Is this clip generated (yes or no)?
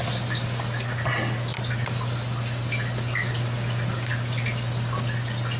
no